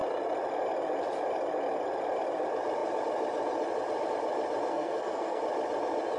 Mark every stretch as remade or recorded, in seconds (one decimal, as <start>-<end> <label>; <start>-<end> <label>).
0.0-4.7 recorded; 4.7-5.4 remade; 5.4-6.2 recorded